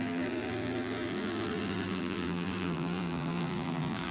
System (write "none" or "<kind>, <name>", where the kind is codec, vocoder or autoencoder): vocoder, BigVGAN v2